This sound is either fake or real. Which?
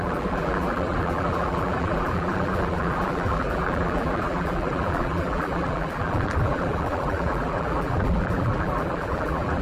fake